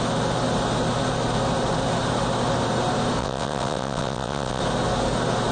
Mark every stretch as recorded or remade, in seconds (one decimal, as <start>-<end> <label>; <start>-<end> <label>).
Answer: 0.0-3.2 recorded; 3.2-4.6 remade; 4.6-5.5 recorded